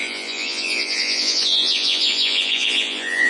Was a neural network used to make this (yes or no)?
yes